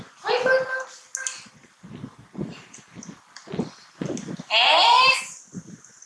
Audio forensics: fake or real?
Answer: real